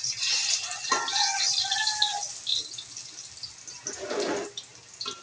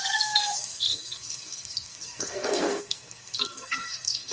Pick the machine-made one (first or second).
second